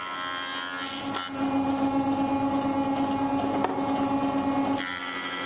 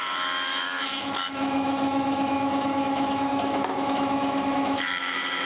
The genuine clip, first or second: first